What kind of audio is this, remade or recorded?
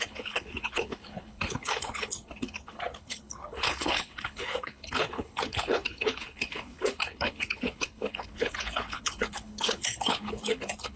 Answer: remade